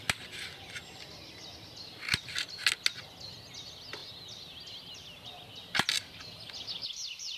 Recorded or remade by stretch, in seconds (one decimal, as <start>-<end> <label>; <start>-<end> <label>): 0.0-7.4 recorded